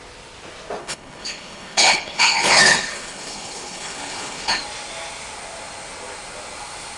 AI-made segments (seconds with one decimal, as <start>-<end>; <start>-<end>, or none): 0.8-4.6